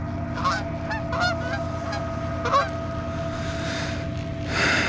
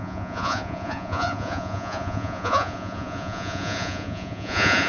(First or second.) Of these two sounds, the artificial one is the second